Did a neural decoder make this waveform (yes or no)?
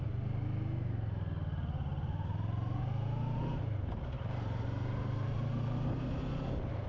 no